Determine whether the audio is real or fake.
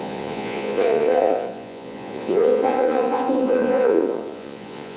fake